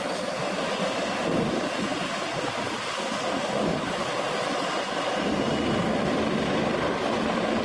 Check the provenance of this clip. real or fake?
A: real